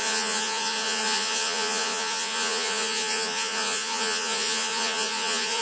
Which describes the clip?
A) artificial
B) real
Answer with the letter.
A